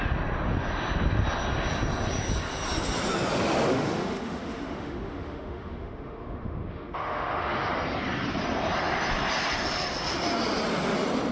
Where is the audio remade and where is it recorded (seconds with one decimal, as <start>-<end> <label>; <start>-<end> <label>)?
0.0-3.7 recorded; 3.7-7.7 remade; 7.7-11.3 recorded